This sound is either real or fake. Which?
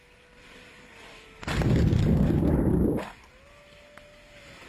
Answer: real